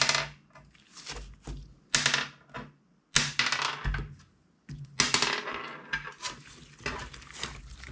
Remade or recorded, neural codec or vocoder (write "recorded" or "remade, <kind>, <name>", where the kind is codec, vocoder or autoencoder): recorded